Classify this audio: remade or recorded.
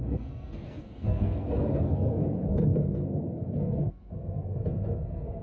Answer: remade